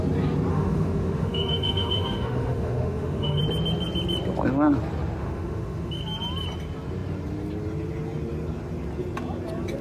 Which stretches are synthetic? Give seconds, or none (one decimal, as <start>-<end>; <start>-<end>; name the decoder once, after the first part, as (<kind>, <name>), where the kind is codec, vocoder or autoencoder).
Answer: 0.5-3.4 (autoencoder, DAC-VAE); 5.2-5.9